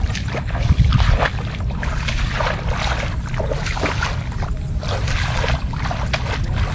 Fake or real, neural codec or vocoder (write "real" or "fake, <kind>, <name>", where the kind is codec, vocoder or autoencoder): real